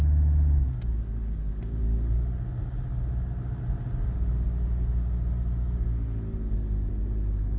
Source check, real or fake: real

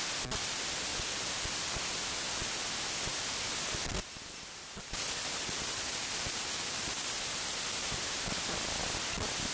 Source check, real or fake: real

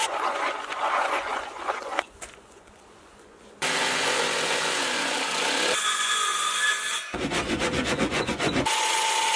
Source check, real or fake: fake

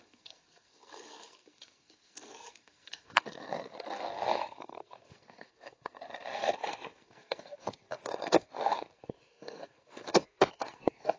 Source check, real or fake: fake